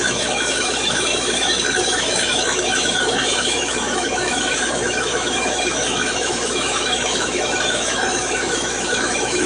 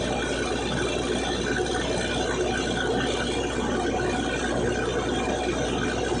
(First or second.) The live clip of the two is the second